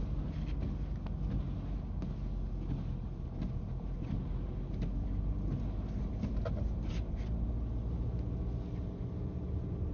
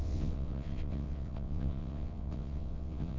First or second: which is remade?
second